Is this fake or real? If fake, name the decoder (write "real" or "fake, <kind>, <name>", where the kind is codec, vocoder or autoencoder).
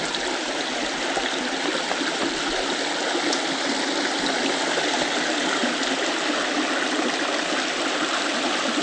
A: real